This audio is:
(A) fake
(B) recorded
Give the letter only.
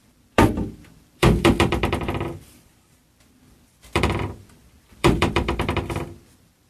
A